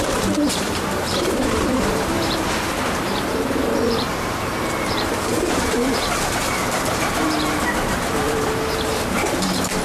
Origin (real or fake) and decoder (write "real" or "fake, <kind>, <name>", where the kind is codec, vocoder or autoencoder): fake, vocoder, BigVGAN v2